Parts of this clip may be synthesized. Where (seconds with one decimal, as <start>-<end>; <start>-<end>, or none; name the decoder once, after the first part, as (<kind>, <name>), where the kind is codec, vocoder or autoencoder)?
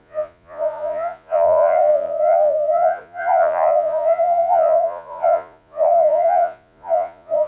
0.0-7.5 (vocoder, Vocos)